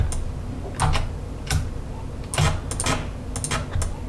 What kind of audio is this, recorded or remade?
recorded